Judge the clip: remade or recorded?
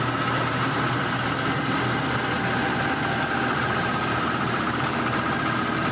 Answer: recorded